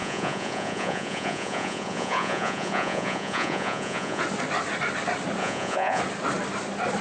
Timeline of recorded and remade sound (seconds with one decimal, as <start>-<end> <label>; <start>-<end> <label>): 0.0-4.2 remade; 4.2-5.4 recorded; 5.4-6.0 remade; 6.0-7.0 recorded